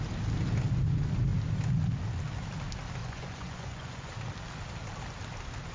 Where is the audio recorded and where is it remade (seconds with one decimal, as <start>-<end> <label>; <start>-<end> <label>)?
0.0-3.0 recorded; 3.0-4.1 remade; 4.1-5.7 recorded